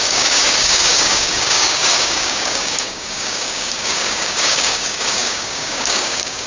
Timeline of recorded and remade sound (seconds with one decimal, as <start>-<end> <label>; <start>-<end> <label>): 0.0-6.5 remade